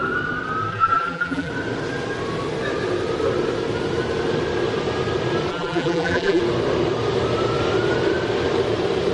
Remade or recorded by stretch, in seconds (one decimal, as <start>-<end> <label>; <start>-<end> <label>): 0.0-0.7 recorded; 0.7-1.5 remade; 1.5-5.5 recorded; 5.5-6.4 remade; 6.4-9.1 recorded